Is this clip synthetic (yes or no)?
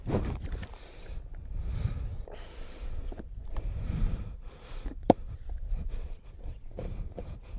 yes